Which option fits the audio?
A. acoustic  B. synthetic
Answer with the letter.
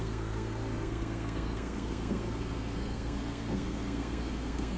B